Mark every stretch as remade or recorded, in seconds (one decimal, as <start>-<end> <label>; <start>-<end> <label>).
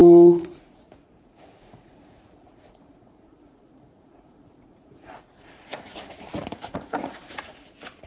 0.0-8.1 remade